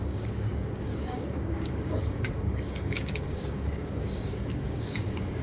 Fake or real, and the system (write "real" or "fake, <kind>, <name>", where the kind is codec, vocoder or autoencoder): fake, codec, DAC